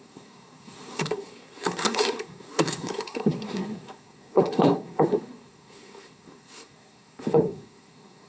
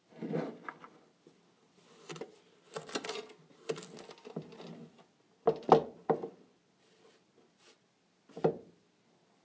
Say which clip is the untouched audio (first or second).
second